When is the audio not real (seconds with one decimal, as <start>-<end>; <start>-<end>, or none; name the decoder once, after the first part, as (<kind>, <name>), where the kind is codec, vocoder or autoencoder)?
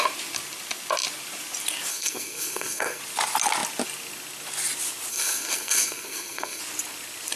1.9-3.0 (codec, SNAC); 5.1-6.6